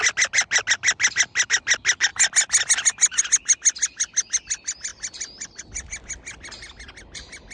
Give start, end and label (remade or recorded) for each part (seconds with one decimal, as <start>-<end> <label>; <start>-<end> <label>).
0.0-7.5 recorded